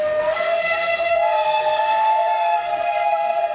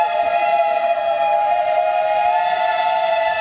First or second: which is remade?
first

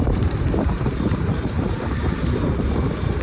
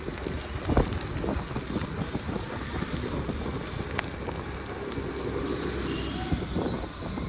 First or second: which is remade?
first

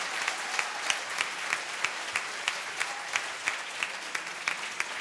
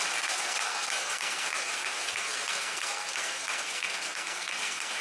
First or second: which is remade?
second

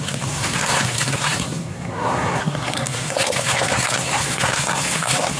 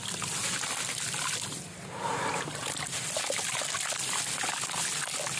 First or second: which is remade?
first